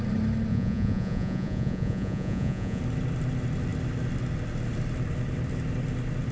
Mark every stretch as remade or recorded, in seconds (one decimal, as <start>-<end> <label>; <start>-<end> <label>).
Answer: 0.0-0.5 recorded; 0.5-2.8 remade; 2.8-6.3 recorded